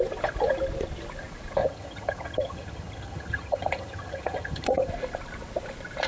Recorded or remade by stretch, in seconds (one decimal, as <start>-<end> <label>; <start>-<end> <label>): 0.0-1.6 recorded; 1.6-4.9 remade; 4.9-6.1 recorded